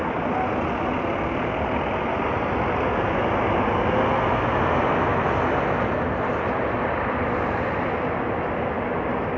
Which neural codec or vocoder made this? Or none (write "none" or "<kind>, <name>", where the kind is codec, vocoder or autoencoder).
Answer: none